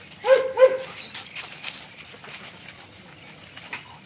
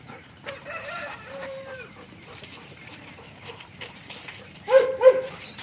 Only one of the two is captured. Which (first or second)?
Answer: first